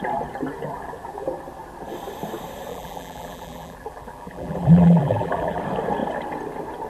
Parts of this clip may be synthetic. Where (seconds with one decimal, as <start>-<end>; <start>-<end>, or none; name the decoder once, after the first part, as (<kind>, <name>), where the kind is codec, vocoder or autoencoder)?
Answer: 2.7-5.6 (vocoder, BigVGAN v2)